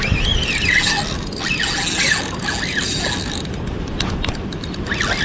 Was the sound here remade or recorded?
recorded